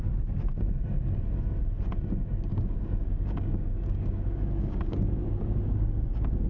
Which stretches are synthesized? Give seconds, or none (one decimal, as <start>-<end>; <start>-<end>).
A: 2.5-6.5